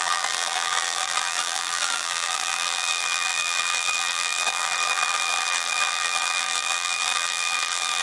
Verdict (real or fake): fake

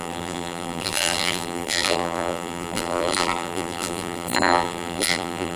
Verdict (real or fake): fake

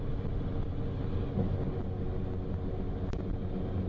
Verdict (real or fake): real